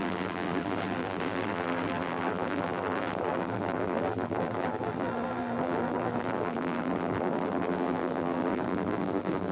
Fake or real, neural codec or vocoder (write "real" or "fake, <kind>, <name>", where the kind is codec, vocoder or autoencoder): fake, vocoder, BigVGAN v2